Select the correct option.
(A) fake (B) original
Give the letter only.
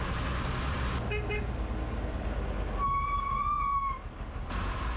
B